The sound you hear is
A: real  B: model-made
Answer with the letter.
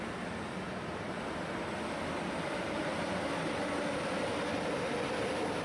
B